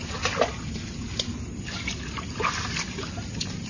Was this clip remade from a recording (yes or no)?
no